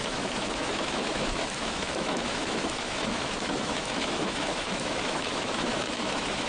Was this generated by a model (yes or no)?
yes